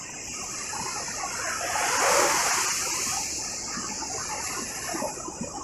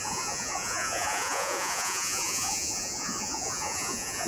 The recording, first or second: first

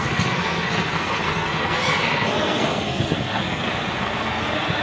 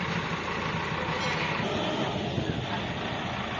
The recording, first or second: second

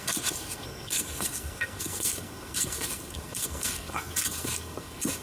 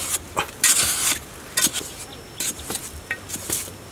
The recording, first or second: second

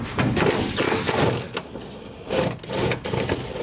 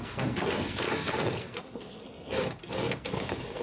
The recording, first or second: first